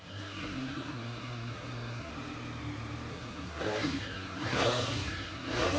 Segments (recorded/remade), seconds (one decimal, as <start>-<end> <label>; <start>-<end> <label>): 0.0-2.1 remade; 2.1-3.1 recorded; 3.1-5.8 remade